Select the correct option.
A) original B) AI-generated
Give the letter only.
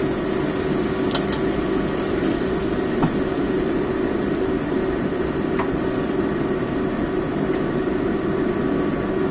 A